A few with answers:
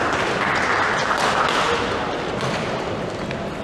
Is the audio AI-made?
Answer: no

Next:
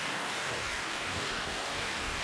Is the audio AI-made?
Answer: yes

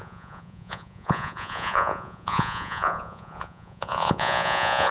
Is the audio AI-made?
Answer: yes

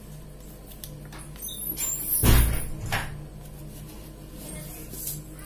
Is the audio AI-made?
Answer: no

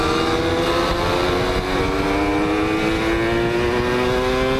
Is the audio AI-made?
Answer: no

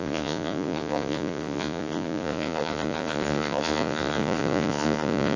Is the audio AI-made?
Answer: yes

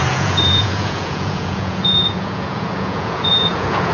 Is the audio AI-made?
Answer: yes